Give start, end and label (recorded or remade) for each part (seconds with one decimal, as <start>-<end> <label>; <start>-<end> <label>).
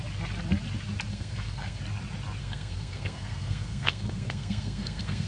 0.0-1.1 recorded; 1.1-1.8 remade; 1.8-2.4 recorded; 2.4-5.3 remade